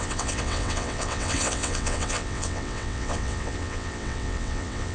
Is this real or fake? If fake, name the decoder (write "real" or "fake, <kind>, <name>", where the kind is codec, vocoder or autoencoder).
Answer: fake, vocoder, WaveNeXt